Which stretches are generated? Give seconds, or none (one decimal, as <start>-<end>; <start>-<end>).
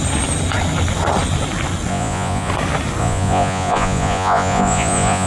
1.9-2.5; 3.0-5.3